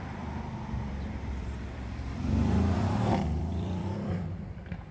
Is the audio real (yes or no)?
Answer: no